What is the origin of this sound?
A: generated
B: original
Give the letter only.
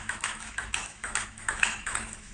A